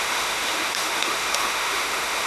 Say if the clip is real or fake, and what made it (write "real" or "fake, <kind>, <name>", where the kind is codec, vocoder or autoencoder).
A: fake, autoencoder, DAC-VAE